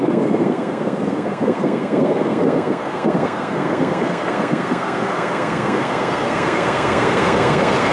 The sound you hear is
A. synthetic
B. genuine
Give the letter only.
A